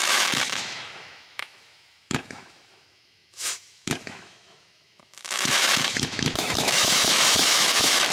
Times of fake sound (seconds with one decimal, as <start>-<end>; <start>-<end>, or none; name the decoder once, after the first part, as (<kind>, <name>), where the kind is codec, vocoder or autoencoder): 0.0-8.1 (autoencoder, DAC-VAE)